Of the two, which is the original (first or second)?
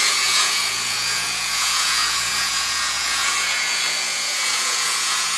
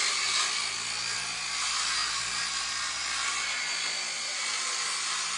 second